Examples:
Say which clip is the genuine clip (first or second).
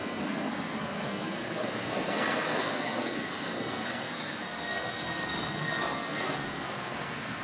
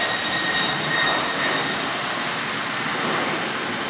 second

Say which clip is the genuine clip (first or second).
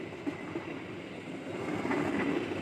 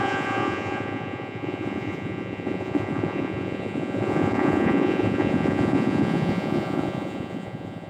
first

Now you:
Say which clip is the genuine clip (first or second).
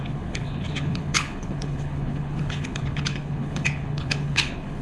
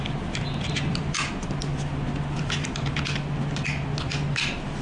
second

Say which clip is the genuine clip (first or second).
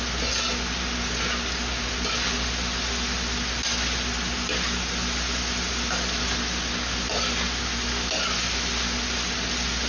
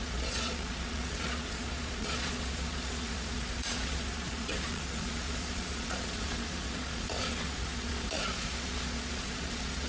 first